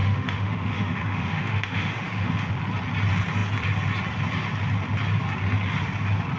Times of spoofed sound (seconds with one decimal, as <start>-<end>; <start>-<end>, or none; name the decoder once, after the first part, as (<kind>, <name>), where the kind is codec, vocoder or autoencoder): 0.0-2.5 (autoencoder, DAC-VAE)